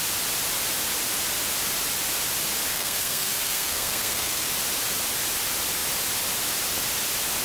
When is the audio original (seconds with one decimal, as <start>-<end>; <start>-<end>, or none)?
0.0-2.7; 4.5-7.4